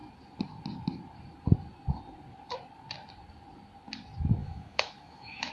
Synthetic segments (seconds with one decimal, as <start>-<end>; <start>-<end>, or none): 4.4-5.5